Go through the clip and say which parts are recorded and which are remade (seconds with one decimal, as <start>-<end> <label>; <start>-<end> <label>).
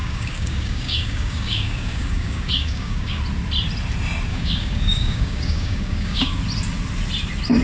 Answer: 0.0-3.2 remade; 3.2-4.3 recorded; 4.3-6.4 remade; 6.4-7.6 recorded